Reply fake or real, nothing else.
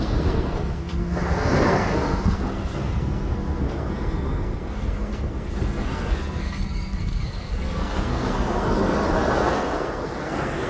fake